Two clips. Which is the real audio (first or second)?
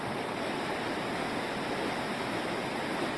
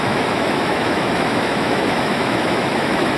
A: first